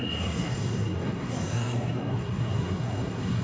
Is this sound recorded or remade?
remade